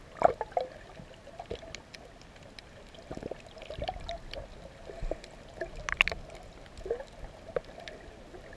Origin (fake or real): real